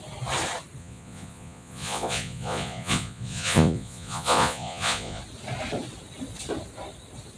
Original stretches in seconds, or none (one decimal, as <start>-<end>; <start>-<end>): 0.0-0.8; 5.2-7.4